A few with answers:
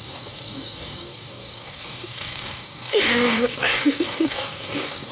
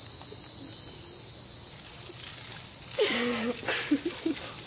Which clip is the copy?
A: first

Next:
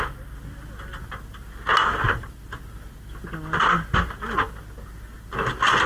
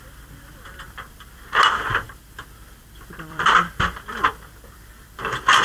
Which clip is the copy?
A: second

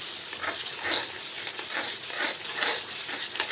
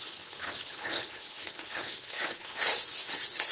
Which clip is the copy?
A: second